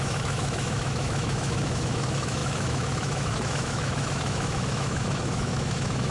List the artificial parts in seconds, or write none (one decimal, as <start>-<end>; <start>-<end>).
0.0-6.1